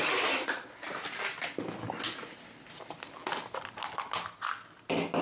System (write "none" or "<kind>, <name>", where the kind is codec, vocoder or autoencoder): none